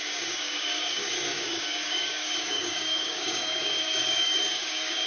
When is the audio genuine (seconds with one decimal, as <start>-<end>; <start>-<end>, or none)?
none